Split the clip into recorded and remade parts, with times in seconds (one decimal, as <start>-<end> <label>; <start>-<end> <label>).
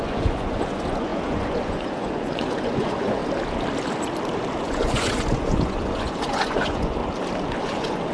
0.0-3.2 remade; 3.2-4.6 recorded; 4.6-7.0 remade; 7.0-7.6 recorded; 7.6-8.1 remade